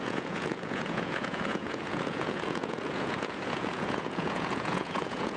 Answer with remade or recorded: remade